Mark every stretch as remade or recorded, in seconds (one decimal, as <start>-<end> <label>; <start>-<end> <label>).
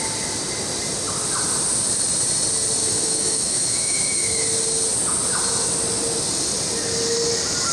0.0-2.8 recorded; 2.8-4.4 remade; 4.4-7.7 recorded